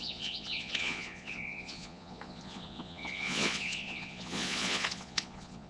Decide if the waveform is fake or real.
fake